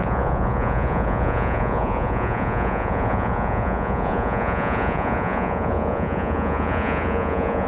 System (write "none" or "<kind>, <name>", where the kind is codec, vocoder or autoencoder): vocoder, Vocos